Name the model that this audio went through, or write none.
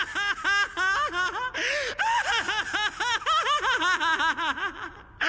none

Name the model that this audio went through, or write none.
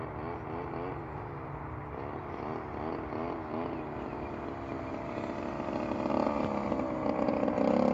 none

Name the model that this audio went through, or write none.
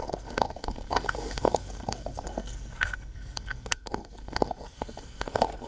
codec, SNAC